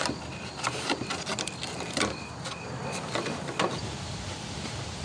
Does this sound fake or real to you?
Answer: fake